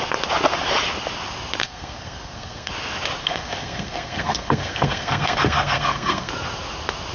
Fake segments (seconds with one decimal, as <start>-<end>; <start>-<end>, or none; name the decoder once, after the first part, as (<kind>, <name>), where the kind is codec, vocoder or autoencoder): 1.6-2.7 (codec, SNAC); 3.2-6.3